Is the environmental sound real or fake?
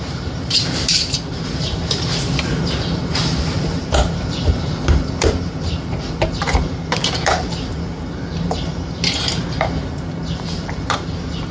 fake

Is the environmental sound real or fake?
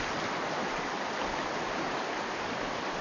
real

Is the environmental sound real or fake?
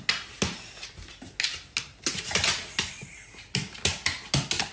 real